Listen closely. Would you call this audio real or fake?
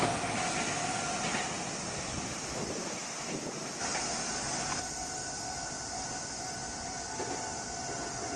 real